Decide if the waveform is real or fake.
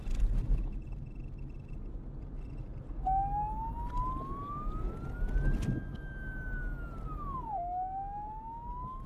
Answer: real